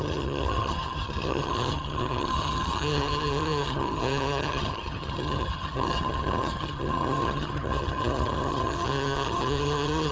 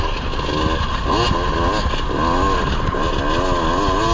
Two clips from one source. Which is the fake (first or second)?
first